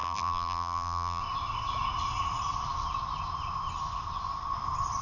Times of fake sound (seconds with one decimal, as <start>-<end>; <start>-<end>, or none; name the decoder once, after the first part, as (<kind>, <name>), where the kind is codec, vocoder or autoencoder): 0.0-1.2 (vocoder, BigVGAN v2)

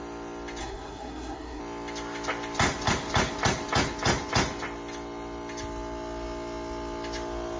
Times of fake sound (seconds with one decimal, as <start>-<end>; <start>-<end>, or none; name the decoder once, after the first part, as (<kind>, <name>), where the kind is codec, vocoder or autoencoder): 0.6-1.6 (codec, SNAC)

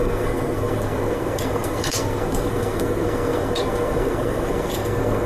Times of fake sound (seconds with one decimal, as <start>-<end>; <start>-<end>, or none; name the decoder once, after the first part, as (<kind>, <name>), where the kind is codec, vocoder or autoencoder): 0.0-5.3 (codec, SNAC)

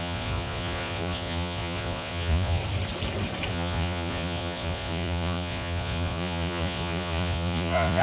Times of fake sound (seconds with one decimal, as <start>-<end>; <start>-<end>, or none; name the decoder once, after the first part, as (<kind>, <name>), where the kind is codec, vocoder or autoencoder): 0.0-2.6 (vocoder, Vocos); 3.5-8.0

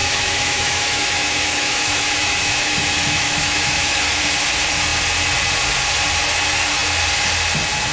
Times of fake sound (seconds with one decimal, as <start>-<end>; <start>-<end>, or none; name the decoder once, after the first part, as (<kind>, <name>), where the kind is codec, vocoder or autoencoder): 0.0-4.0 (autoencoder, DAC-VAE)

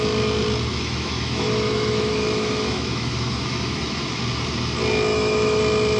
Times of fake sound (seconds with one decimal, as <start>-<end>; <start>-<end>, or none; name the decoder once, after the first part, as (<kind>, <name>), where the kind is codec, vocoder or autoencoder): 0.7-4.2 (autoencoder, DAC-VAE); 5.1-5.6

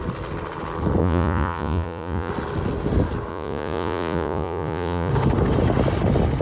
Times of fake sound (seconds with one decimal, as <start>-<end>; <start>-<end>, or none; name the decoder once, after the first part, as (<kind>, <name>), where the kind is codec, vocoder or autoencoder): 1.0-2.3 (vocoder, Vocos); 3.3-5.1